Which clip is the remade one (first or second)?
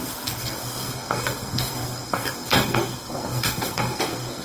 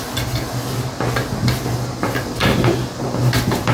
first